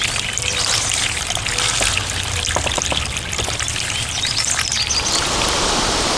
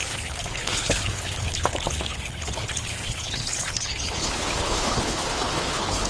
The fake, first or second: second